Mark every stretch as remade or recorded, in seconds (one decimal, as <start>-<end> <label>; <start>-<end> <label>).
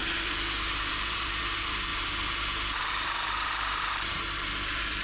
0.0-5.0 remade